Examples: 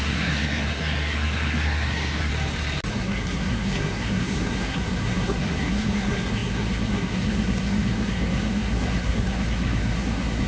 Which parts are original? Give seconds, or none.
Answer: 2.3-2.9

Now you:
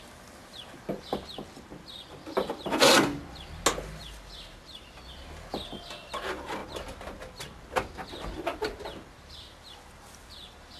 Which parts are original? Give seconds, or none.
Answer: 0.0-10.8

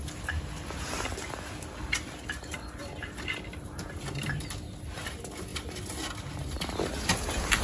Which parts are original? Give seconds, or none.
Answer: 0.0-7.6

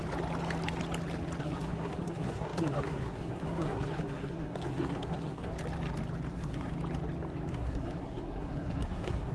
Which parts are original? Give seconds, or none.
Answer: 0.0-1.4; 5.5-6.3; 6.7-7.5

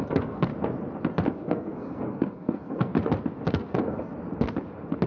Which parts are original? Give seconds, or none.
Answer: 0.5-1.3; 2.9-3.5; 4.1-5.1

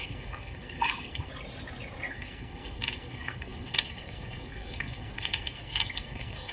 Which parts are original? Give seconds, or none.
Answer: 1.3-2.1

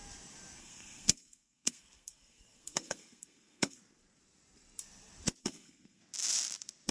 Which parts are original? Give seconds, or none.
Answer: 0.0-0.6; 3.8-5.4; 6.0-6.9

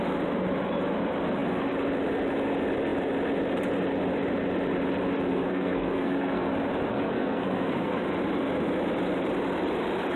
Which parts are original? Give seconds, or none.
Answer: 0.0-5.3; 6.5-6.9; 8.0-10.2